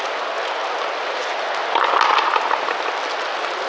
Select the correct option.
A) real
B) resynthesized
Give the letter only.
A